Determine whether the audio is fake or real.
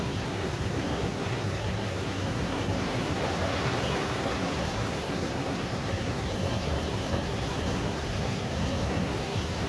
fake